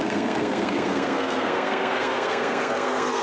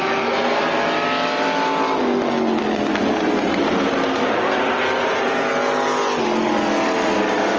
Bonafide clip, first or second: second